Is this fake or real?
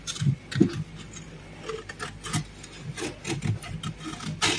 real